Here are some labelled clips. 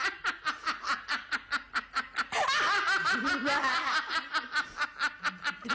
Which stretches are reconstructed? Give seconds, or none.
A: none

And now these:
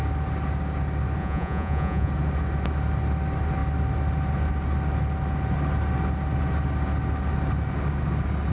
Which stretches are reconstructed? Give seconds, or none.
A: 1.2-2.1 (vocoder, Vocos)

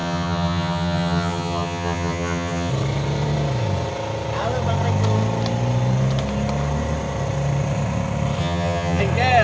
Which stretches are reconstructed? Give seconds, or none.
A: 0.0-2.7 (vocoder, HiFi-GAN); 8.4-9.0